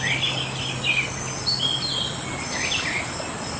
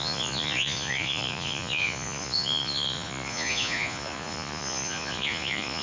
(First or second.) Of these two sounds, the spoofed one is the second